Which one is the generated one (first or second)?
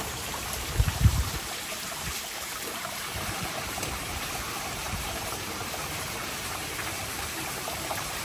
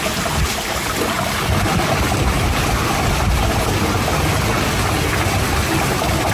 first